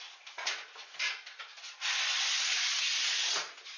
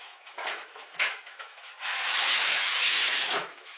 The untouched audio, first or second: first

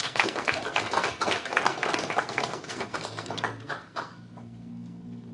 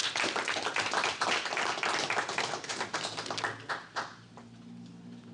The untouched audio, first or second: second